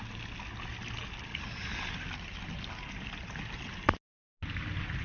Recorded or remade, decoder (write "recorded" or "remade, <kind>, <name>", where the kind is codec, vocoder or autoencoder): recorded